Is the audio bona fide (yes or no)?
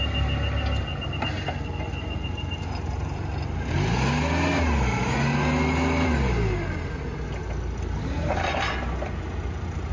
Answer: yes